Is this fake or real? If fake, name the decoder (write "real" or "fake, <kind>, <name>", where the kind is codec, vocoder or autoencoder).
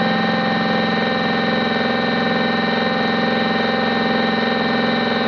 real